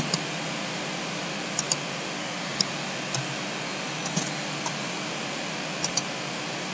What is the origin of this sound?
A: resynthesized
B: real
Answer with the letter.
B